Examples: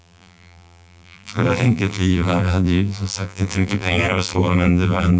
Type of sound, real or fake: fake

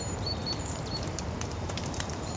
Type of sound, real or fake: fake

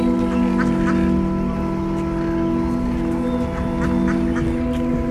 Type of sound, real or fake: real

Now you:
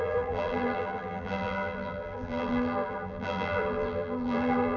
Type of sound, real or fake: fake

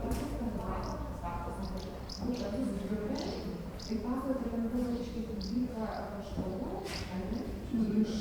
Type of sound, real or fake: fake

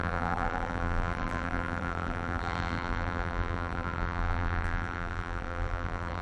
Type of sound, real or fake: fake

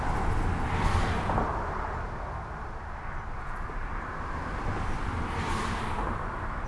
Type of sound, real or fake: real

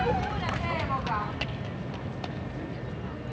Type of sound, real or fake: real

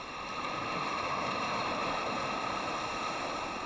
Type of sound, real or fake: real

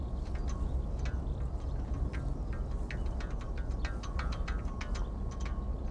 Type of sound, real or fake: real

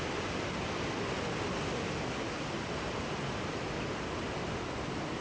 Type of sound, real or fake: real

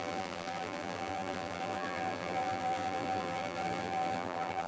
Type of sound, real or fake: fake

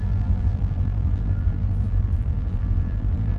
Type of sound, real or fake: fake